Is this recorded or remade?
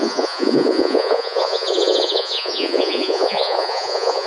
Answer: remade